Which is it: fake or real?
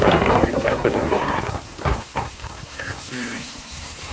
fake